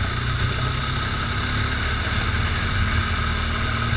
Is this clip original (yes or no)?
yes